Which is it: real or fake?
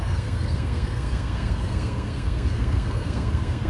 fake